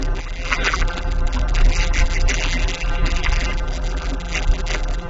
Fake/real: fake